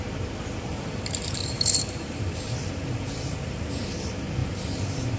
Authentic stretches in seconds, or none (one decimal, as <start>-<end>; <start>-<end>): 0.0-0.7; 3.8-4.4